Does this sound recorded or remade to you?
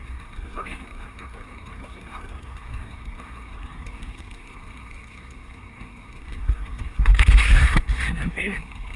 remade